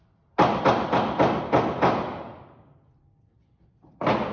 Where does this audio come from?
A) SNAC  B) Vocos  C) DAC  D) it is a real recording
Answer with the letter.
D